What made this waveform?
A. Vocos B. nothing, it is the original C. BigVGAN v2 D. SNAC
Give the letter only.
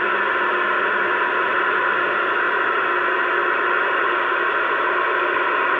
B